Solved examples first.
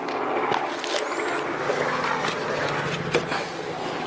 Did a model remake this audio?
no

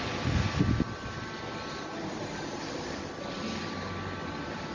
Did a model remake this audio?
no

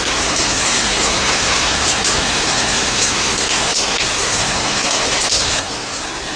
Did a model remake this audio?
yes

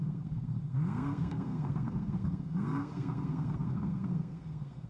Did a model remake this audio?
yes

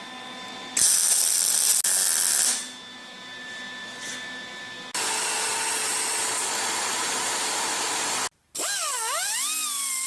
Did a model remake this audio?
no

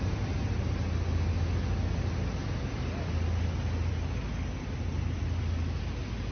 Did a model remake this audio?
no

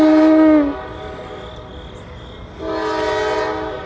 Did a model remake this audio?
no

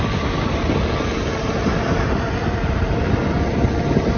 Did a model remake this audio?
no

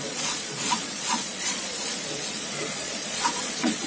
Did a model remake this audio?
yes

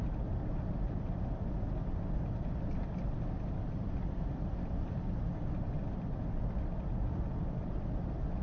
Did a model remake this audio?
no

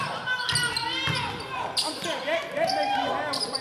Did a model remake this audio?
no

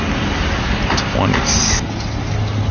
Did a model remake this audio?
no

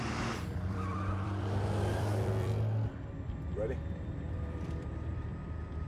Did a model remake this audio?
yes